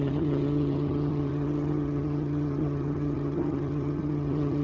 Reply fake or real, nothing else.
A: fake